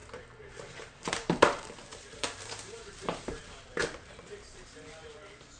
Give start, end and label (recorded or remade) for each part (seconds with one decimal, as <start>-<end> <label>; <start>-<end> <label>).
0.0-3.4 remade; 3.4-5.6 recorded